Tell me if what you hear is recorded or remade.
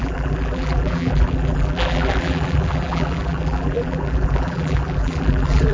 remade